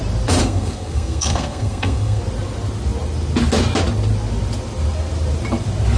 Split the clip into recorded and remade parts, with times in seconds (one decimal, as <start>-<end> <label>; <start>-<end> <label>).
0.0-0.4 recorded; 0.4-2.2 remade; 2.2-6.0 recorded